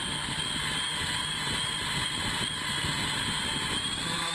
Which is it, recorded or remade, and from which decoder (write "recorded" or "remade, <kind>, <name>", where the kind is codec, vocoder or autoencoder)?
recorded